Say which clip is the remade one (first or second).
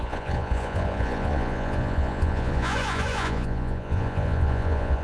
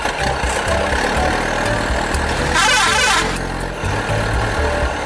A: first